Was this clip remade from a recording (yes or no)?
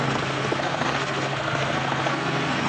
yes